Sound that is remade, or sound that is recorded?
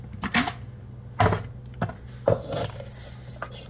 recorded